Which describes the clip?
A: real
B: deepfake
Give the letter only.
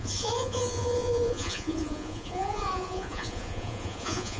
B